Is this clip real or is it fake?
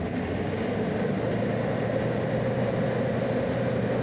real